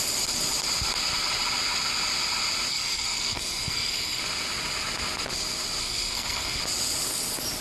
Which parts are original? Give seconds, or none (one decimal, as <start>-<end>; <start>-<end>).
0.0-2.7; 4.2-5.8; 6.6-7.6